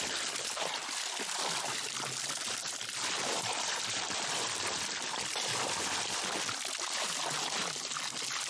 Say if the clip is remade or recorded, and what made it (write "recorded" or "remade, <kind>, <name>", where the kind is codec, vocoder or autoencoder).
recorded